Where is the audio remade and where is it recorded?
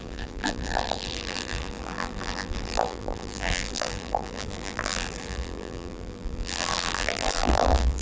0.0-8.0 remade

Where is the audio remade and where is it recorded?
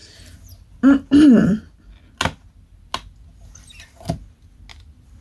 0.0-5.2 recorded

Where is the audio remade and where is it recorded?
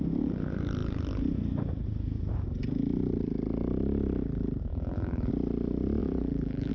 0.0-4.7 recorded; 4.7-5.3 remade; 5.3-6.0 recorded; 6.0-6.7 remade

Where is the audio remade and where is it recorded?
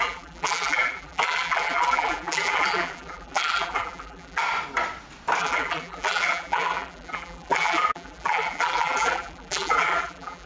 0.0-4.4 remade; 4.4-5.4 recorded; 5.4-10.5 remade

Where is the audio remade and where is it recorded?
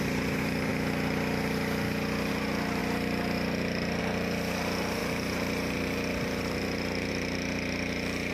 0.0-0.7 remade; 0.7-2.3 recorded; 2.3-2.8 remade; 2.8-4.0 recorded; 4.0-8.3 remade